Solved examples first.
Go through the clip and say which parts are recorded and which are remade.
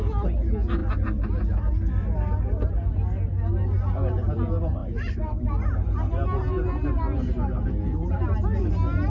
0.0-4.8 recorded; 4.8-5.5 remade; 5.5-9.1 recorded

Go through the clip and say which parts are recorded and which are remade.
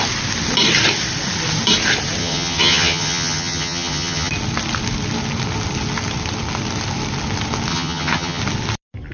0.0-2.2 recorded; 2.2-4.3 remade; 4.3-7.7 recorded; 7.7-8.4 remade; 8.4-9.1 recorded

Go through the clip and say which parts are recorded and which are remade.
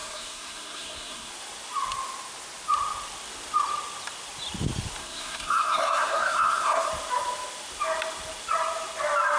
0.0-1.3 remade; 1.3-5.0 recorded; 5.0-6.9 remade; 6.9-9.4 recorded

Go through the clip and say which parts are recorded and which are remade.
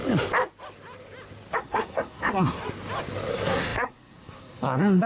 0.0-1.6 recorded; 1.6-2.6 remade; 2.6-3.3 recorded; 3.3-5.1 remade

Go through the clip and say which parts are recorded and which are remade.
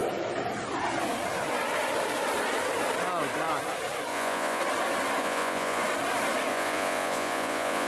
0.0-4.1 recorded; 4.1-4.6 remade; 4.6-5.2 recorded; 5.2-5.8 remade; 5.8-6.5 recorded; 6.5-7.9 remade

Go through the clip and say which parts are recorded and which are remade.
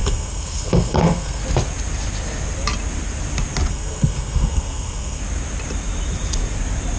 0.0-1.4 remade; 1.4-3.7 recorded; 3.7-5.2 remade; 5.2-7.0 recorded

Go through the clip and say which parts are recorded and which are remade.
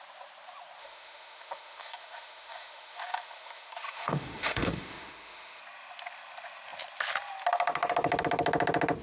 0.0-0.8 recorded; 0.8-5.6 remade; 5.6-9.0 recorded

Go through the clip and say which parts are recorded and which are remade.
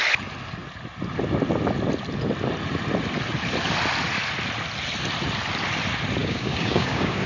0.0-6.2 recorded; 6.2-7.3 remade